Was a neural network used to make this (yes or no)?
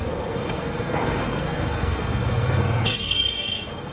yes